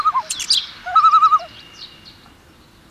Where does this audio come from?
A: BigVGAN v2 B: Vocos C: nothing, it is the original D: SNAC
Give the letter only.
C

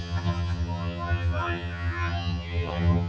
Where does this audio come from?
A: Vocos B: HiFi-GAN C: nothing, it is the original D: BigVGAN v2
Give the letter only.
B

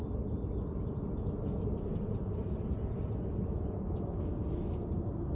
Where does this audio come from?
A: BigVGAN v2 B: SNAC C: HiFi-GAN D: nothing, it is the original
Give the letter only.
D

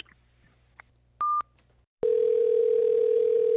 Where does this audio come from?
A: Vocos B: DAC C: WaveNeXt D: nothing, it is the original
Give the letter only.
D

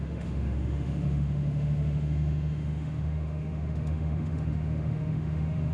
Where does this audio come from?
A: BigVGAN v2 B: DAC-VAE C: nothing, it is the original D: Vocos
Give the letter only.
B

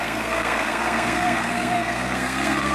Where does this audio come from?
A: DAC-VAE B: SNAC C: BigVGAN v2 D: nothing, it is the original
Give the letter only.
B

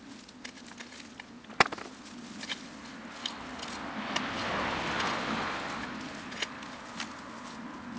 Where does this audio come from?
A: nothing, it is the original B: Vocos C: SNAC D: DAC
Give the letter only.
A